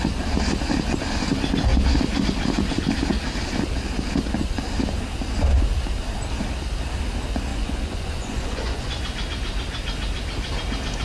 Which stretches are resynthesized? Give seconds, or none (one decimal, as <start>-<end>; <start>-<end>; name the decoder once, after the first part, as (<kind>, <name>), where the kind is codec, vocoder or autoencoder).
7.5-8.9 (vocoder, Vocos)